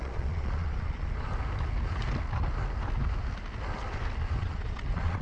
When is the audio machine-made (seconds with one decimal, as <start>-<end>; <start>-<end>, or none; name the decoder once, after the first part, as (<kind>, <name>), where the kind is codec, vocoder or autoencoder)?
0.0-1.3 (vocoder, Vocos); 4.4-5.2